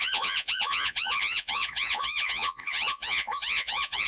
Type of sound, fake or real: fake